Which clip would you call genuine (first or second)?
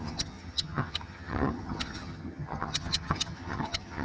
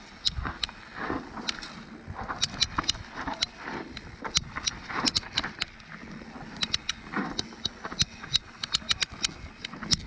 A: second